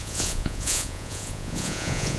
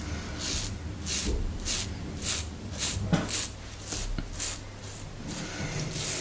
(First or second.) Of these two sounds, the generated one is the first